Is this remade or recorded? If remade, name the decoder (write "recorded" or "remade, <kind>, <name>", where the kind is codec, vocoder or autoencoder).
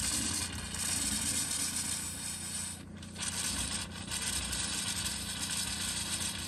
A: recorded